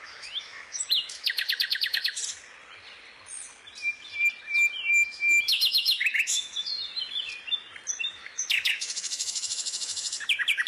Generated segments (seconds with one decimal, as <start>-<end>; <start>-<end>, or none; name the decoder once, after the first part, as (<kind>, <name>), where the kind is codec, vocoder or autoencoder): 0.0-2.2 (autoencoder, DAC-VAE); 4.9-6.7; 8.1-10.7